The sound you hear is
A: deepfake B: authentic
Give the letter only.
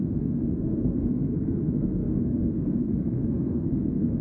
A